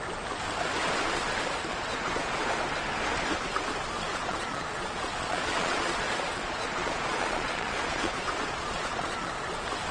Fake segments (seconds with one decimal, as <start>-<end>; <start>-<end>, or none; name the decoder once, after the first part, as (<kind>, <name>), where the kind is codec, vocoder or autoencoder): 1.7-2.4 (vocoder, Vocos); 4.1-9.3